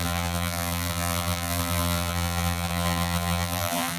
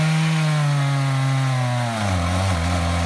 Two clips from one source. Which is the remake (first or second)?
first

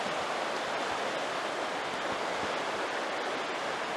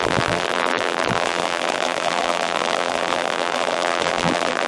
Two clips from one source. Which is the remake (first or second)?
second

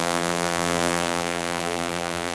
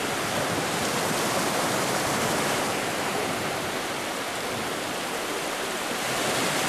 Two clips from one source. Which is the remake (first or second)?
first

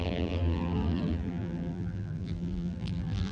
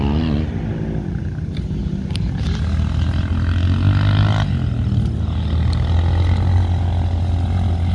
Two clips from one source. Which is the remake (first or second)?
first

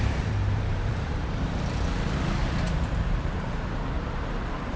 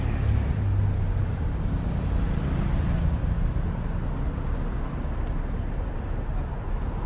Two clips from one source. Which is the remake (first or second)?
first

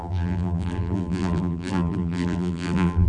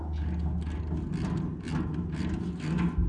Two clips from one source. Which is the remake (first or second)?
first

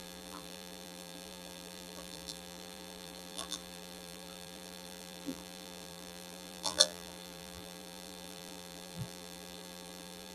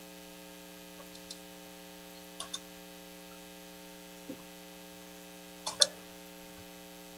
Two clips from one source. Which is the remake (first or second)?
first